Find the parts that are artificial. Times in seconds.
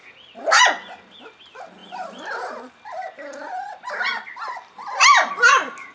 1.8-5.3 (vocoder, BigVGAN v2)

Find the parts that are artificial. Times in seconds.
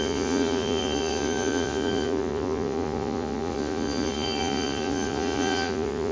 0.0-6.1 (vocoder, Vocos)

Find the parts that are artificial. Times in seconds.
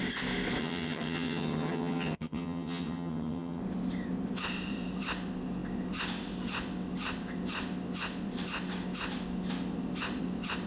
0.6-3.6 (vocoder, HiFi-GAN)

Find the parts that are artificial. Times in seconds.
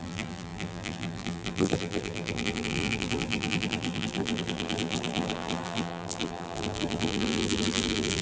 0.0-8.2 (vocoder, BigVGAN v2)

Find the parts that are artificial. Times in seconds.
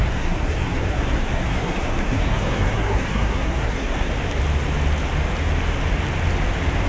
0.0-4.1 (codec, SNAC)